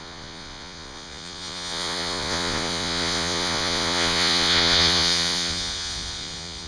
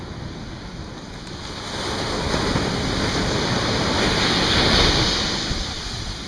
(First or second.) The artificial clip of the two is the first